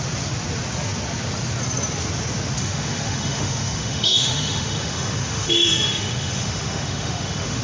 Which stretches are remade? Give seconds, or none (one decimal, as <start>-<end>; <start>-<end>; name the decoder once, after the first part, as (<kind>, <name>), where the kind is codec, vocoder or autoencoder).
2.6-7.6 (autoencoder, DAC-VAE)